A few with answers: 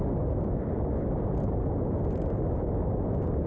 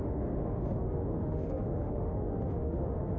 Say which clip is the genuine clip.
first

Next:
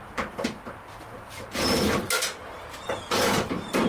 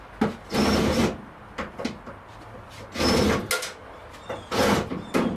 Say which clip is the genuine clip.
second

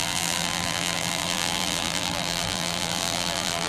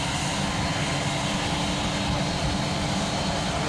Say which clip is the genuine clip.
second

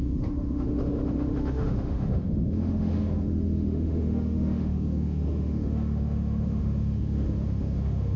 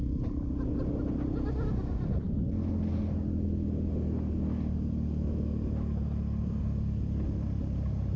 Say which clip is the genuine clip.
second